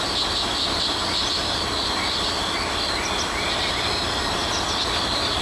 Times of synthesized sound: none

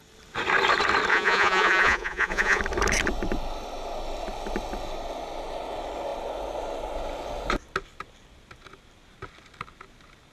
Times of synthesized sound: 1.1-2.6

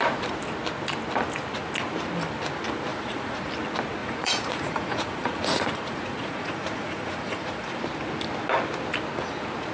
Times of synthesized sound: 2.9-3.5; 4.0-7.8

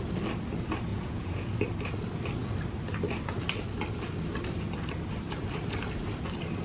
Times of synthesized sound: 0.9-1.5